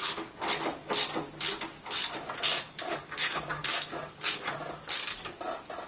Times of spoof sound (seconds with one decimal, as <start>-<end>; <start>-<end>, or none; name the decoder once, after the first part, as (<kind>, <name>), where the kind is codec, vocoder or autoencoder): 2.5-5.4 (codec, DAC)